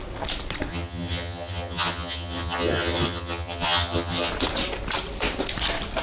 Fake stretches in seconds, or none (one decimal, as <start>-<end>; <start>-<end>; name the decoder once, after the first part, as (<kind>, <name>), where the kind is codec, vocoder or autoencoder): 0.7-4.3 (vocoder, HiFi-GAN)